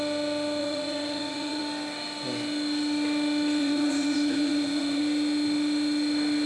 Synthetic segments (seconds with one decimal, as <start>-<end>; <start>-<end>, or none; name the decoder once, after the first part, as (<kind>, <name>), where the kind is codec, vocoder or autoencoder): 0.6-1.6 (vocoder, Vocos); 3.6-5.0